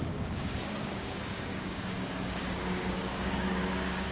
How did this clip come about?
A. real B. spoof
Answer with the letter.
B